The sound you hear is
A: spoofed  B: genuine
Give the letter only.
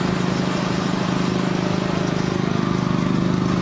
B